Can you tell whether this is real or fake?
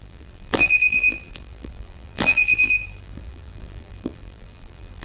fake